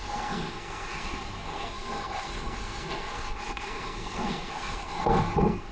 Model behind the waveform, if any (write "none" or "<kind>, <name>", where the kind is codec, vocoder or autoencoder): codec, SNAC